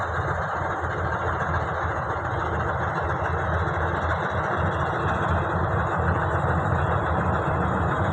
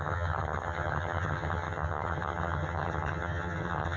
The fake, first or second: second